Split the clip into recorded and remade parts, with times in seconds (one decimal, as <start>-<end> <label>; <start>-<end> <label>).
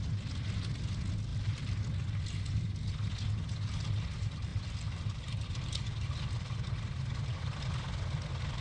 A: 0.0-1.3 recorded; 1.3-1.8 remade; 1.8-4.5 recorded; 4.5-6.0 remade; 6.0-8.6 recorded